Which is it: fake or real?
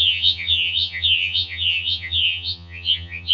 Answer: fake